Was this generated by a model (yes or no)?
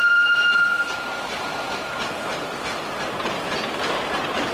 no